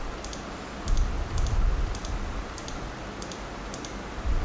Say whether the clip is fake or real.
real